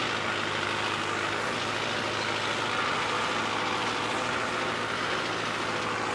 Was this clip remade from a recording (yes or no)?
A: no